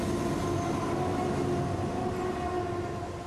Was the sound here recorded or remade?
recorded